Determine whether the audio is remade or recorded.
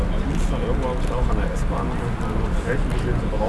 recorded